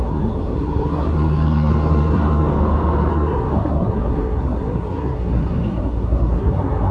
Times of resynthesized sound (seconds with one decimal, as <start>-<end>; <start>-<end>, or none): 0.0-2.5; 3.1-6.9